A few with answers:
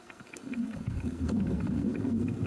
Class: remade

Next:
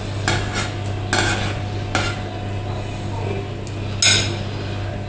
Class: recorded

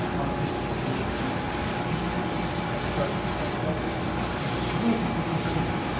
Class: recorded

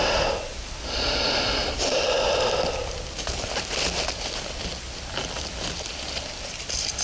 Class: recorded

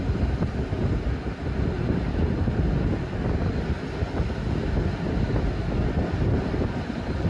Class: recorded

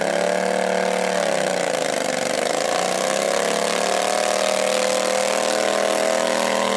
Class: recorded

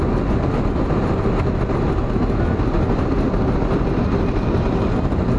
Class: recorded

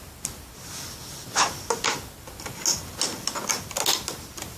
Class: recorded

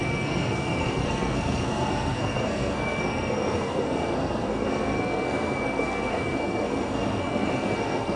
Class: remade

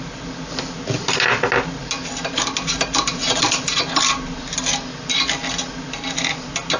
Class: recorded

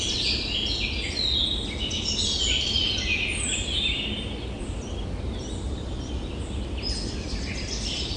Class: recorded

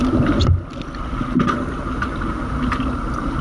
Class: recorded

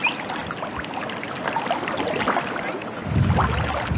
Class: recorded